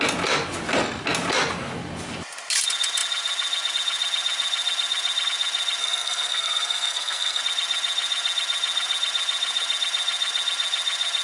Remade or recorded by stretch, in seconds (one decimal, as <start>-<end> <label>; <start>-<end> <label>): 0.0-5.8 recorded; 5.8-7.4 remade; 7.4-11.2 recorded